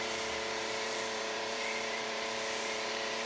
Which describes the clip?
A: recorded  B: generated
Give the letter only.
B